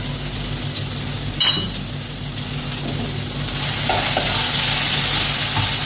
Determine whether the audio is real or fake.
real